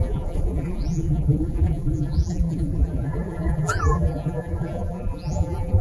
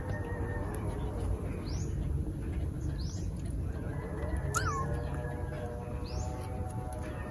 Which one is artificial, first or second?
first